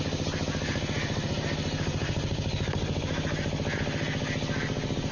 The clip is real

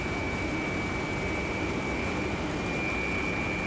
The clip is real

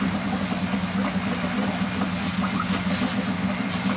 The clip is real